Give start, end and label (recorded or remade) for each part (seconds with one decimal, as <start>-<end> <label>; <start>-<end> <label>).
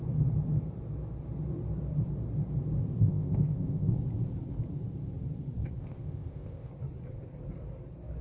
0.0-3.0 recorded; 3.0-3.9 remade; 3.9-5.8 recorded; 5.8-6.7 remade; 6.7-8.2 recorded